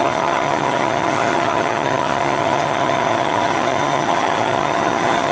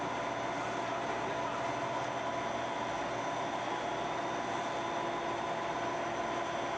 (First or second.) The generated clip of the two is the first